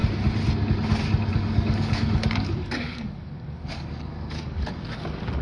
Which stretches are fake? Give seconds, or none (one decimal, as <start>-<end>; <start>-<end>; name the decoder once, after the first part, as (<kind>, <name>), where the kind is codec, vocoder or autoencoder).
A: 1.3-5.4 (codec, DAC)